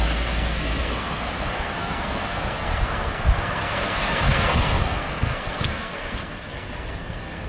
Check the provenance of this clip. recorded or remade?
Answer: remade